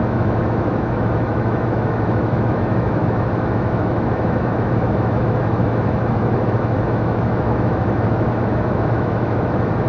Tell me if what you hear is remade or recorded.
remade